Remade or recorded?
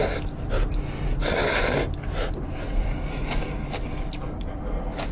recorded